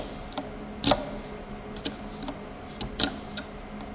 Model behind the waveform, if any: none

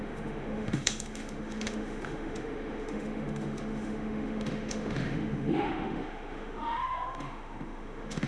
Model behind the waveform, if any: autoencoder, DAC-VAE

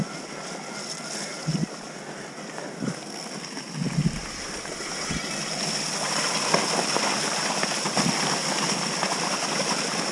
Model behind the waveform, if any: none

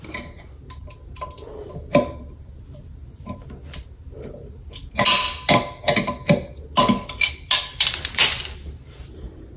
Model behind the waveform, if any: none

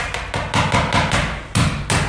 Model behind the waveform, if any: none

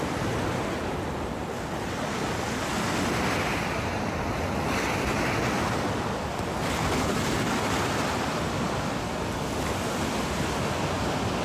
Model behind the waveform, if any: none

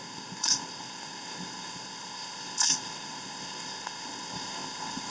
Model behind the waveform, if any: codec, ZipCodec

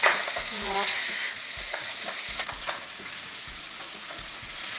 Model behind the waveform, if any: vocoder, Vocos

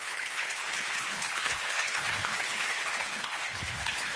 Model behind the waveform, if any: codec, HILCodec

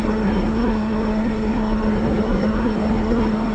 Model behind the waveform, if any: codec, SNAC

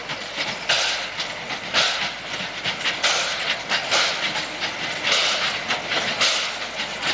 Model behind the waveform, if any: none